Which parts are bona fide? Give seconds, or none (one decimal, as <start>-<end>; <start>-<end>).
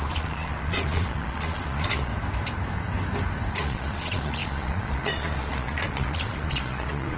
2.1-3.5